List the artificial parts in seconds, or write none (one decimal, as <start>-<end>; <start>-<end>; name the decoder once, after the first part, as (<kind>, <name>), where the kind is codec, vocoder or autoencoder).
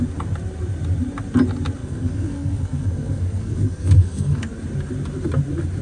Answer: 1.8-4.5 (codec, SNAC)